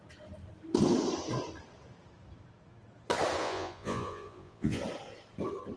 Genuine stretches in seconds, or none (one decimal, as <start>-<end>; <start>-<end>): 0.0-3.4; 4.8-5.8